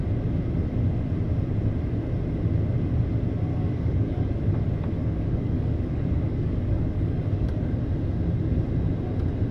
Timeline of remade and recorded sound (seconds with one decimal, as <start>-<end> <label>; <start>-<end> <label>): 0.0-3.5 recorded; 3.5-4.5 remade; 4.5-5.0 recorded; 5.0-7.8 remade; 7.8-9.5 recorded